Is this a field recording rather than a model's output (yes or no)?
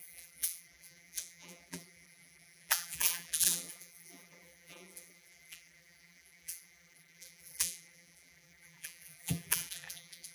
no